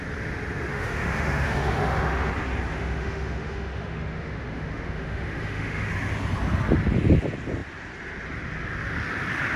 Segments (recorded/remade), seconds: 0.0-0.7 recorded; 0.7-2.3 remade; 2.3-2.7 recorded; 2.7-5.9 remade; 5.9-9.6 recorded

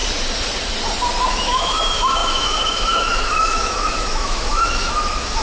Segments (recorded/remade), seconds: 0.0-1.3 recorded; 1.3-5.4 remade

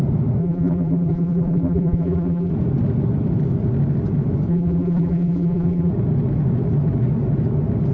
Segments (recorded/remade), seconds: 0.0-0.4 recorded; 0.4-2.5 remade; 2.5-4.5 recorded; 4.5-5.9 remade; 5.9-7.9 recorded